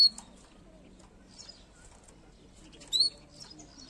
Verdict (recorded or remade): recorded